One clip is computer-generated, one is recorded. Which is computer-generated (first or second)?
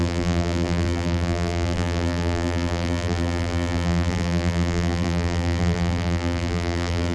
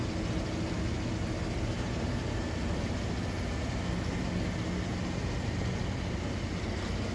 first